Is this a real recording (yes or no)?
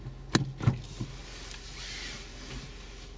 yes